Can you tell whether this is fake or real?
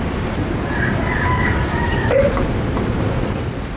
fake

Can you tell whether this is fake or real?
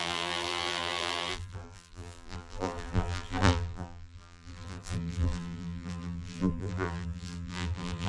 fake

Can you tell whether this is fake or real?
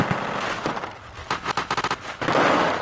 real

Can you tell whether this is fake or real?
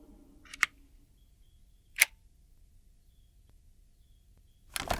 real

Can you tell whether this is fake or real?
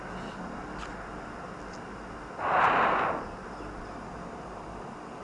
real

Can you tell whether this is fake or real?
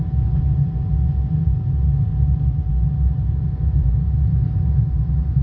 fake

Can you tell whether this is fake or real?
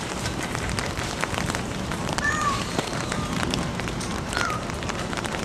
fake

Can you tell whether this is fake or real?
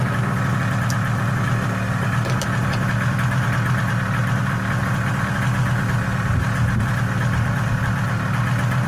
real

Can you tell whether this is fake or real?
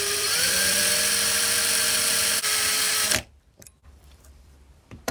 fake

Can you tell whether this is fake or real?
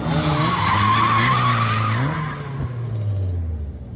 real